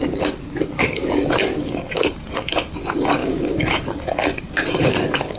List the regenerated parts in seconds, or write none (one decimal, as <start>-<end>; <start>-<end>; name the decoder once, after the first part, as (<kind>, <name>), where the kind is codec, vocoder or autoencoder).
0.0-5.4 (codec, DAC)